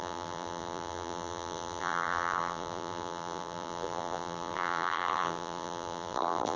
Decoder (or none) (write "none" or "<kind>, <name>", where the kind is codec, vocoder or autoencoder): vocoder, BigVGAN v2